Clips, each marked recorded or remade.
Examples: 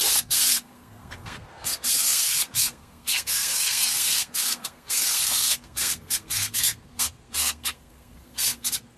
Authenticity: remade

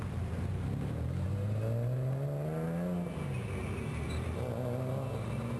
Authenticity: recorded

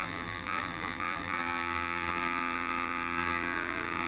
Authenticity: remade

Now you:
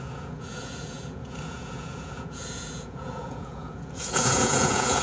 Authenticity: remade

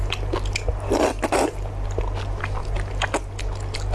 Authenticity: recorded